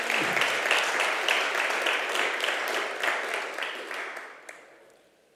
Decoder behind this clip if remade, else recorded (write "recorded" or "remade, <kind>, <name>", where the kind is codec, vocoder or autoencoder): recorded